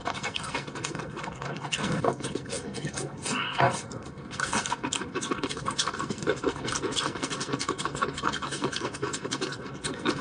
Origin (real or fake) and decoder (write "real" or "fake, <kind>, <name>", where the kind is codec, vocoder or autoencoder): fake, codec, SNAC